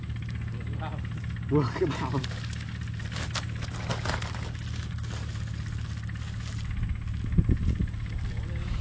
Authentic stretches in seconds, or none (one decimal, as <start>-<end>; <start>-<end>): 0.0-8.8